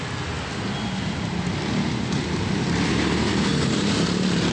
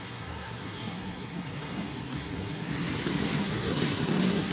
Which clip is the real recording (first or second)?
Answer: first